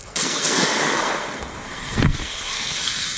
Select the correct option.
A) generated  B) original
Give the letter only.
A